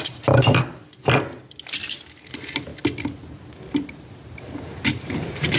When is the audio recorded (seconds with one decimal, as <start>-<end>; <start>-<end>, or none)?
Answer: 0.4-2.3; 2.7-3.9